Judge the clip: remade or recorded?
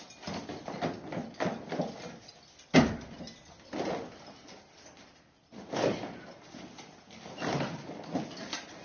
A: recorded